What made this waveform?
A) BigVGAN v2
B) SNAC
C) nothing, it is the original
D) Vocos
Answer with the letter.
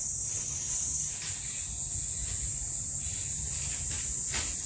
C